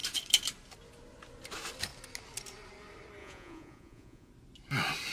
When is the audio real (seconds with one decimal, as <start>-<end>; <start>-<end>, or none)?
0.0-3.2; 4.3-5.1